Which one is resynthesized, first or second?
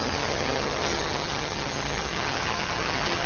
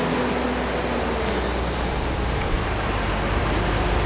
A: first